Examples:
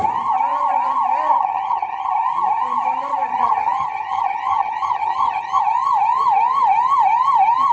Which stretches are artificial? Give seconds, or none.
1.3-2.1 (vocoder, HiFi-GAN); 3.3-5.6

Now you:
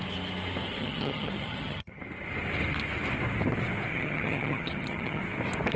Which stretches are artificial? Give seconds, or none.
0.8-2.0 (vocoder, HiFi-GAN); 3.9-5.2

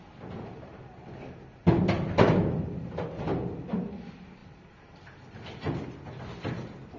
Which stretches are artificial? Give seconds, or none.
none

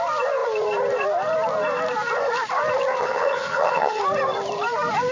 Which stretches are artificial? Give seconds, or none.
2.9-4.0 (vocoder, HiFi-GAN)

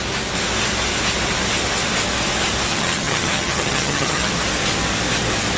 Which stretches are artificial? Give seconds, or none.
2.7-4.3 (vocoder, HiFi-GAN)